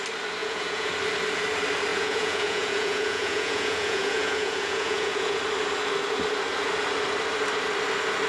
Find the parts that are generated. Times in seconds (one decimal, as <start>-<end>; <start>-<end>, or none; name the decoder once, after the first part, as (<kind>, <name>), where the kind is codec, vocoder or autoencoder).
0.4-0.9 (vocoder, Vocos); 1.9-5.4